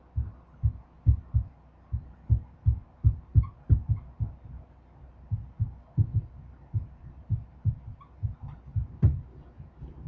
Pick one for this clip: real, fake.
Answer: real